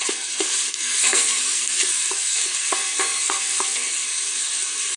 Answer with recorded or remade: remade